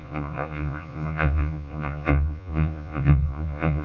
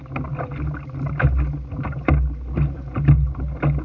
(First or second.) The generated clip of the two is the first